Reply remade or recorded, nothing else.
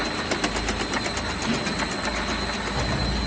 recorded